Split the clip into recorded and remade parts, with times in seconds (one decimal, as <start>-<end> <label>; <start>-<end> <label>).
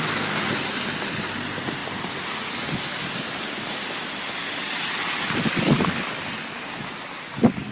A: 0.0-7.7 recorded